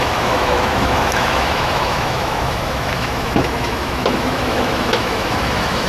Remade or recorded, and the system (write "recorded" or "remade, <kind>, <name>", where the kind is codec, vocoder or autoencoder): remade, autoencoder, DAC-VAE